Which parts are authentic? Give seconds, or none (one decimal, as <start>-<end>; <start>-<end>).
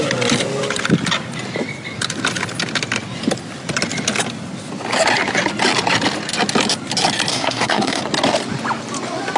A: 0.0-7.3; 8.0-9.4